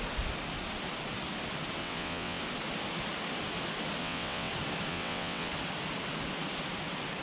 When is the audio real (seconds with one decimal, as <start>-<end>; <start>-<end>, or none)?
0.0-1.8; 2.4-4.0; 4.5-4.9; 5.5-7.2